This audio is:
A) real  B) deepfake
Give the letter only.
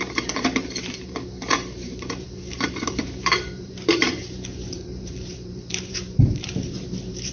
B